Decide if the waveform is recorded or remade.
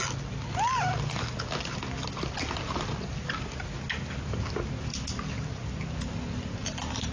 recorded